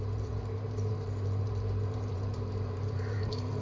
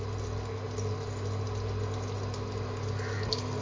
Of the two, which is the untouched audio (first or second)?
second